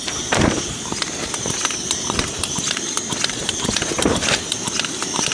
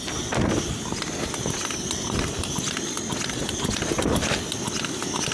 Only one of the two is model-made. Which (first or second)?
first